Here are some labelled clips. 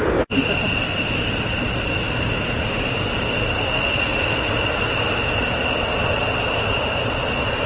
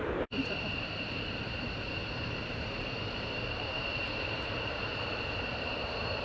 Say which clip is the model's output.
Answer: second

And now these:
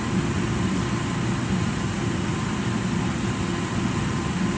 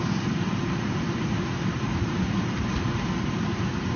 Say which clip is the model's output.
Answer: second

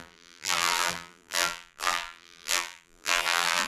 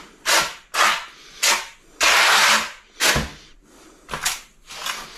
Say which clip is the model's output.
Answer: first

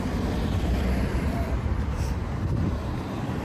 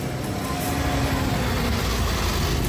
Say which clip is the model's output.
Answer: first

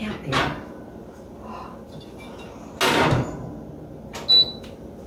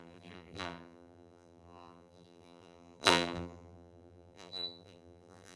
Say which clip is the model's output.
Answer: second